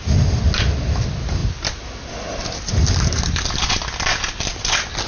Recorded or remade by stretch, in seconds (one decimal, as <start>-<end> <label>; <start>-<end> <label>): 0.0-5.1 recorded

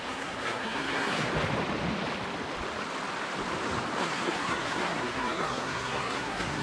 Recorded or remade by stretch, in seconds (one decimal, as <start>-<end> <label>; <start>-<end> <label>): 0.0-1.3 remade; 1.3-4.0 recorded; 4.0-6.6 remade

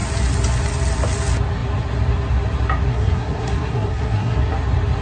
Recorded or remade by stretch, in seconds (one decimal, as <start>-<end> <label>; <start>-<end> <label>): 0.0-2.9 recorded; 2.9-4.5 remade; 4.5-5.0 recorded